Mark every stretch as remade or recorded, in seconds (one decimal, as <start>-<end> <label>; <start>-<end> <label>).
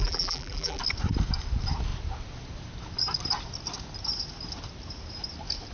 0.0-0.8 remade; 0.8-5.7 recorded